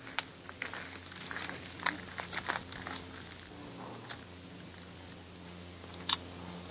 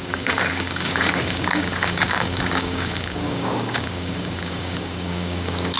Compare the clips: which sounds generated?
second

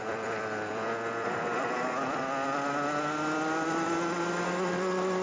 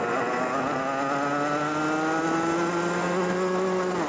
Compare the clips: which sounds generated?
first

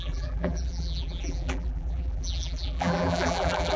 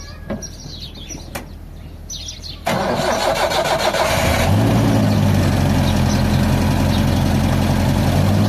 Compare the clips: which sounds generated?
first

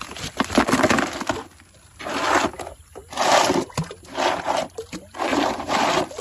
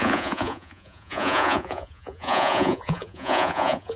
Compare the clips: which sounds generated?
second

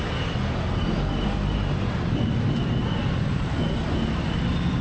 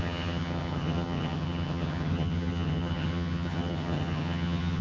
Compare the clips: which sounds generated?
second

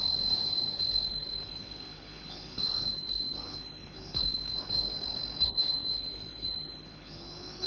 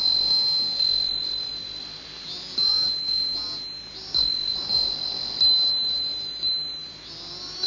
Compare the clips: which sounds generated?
first